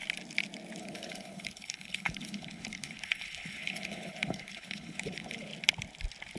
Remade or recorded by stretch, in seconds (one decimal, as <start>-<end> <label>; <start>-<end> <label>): 0.0-0.8 recorded; 0.8-5.5 remade; 5.5-6.4 recorded